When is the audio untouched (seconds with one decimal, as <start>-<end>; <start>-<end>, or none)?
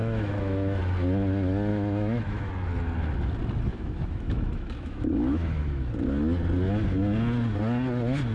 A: 0.8-1.7; 2.5-3.7; 5.9-8.3